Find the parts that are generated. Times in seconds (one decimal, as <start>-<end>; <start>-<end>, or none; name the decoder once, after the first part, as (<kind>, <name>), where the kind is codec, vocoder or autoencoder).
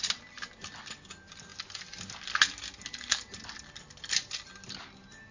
none